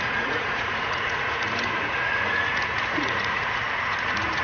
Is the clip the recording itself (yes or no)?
no